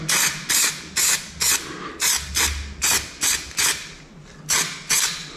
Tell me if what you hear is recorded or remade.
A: recorded